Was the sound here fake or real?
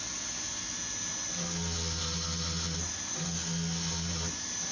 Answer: real